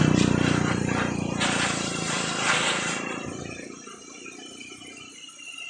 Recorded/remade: remade